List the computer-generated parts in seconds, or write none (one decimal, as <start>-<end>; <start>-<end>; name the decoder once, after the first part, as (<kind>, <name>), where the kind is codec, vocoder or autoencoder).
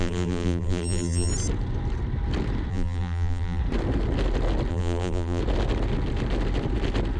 0.0-1.3 (vocoder, BigVGAN v2); 2.7-3.6; 4.7-5.4